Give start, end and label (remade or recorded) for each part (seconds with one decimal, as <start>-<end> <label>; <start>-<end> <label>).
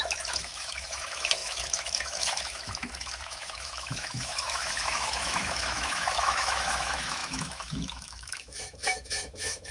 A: 0.0-9.7 remade